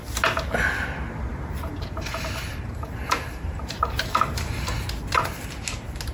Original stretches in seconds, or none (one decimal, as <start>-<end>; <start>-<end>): 0.0-1.3; 4.8-6.1